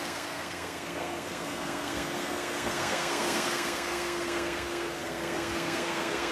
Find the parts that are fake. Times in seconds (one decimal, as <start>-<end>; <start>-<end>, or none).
0.0-6.3